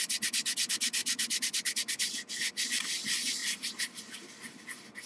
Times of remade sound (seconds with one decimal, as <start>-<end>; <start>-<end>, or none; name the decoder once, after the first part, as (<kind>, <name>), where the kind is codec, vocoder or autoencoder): 1.0-2.3 (vocoder, BigVGAN v2); 3.4-4.6